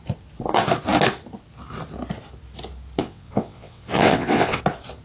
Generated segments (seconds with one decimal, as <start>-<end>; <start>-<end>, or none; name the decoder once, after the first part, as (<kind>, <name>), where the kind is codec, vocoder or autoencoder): 3.0-4.6 (vocoder, WaveNeXt)